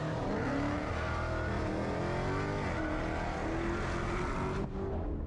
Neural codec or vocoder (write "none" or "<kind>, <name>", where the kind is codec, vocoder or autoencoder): none